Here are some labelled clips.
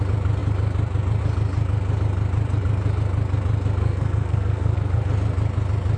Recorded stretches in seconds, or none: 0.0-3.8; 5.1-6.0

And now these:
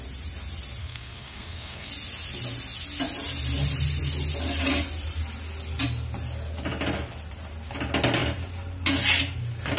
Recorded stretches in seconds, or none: 0.0-0.8; 1.9-9.8

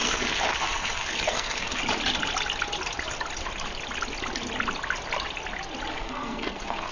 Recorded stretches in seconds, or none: 1.8-5.9

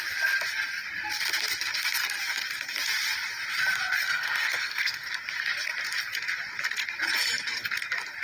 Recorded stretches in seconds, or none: 0.0-4.0; 5.1-8.2

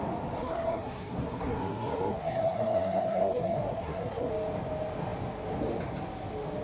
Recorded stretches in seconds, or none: 0.0-0.4; 4.3-6.6

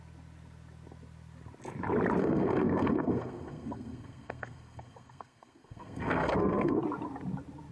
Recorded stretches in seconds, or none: 0.0-2.2; 6.8-7.7

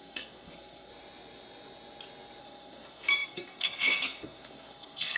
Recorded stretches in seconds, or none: 0.9-2.4